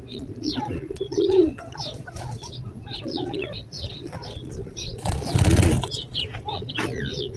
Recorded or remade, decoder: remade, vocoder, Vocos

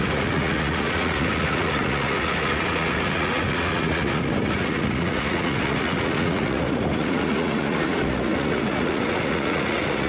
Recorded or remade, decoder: remade, vocoder, Vocos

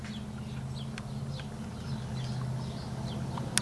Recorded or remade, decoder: recorded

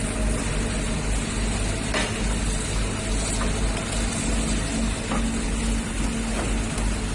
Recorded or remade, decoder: recorded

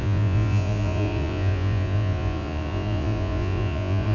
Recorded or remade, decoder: remade, vocoder, Vocos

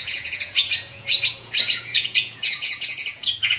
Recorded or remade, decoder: remade, vocoder, Vocos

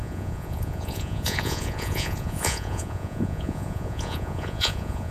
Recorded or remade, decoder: remade, vocoder, Vocos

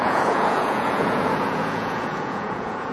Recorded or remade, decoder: remade, vocoder, Vocos